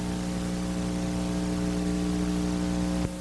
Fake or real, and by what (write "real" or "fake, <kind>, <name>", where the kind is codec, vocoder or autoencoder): real